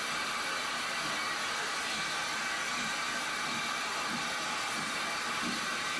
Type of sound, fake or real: real